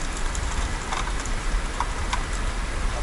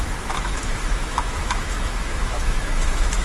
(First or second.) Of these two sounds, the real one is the first